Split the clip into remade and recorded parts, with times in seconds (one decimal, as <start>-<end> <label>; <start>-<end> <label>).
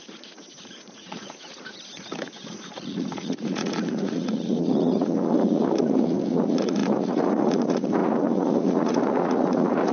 0.0-9.9 remade